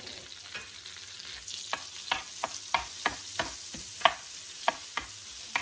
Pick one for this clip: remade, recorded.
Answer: recorded